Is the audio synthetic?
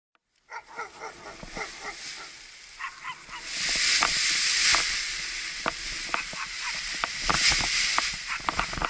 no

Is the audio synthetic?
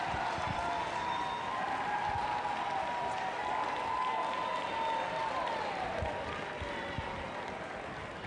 no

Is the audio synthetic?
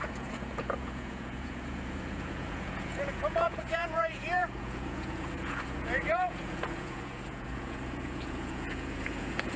yes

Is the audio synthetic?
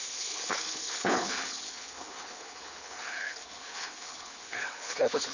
yes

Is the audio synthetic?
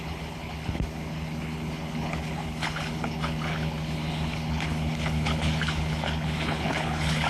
yes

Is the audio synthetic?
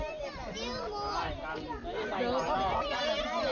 no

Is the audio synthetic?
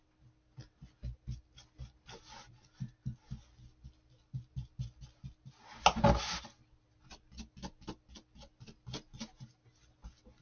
no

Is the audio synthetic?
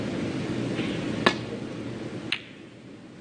no